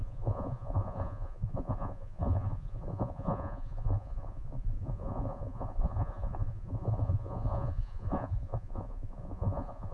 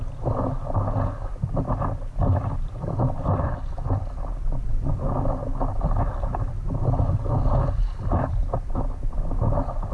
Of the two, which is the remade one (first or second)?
first